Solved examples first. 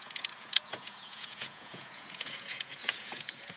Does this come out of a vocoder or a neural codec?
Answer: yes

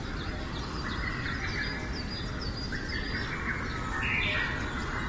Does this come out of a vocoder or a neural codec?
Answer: no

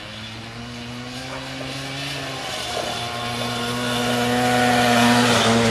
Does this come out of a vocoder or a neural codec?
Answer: no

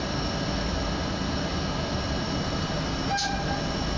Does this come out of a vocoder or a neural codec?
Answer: no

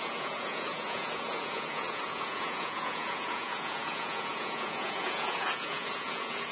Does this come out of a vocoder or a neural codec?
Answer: yes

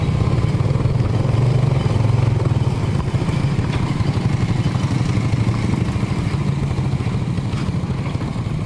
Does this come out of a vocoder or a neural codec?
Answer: no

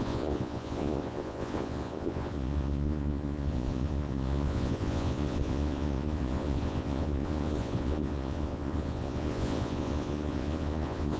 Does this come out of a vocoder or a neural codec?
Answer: yes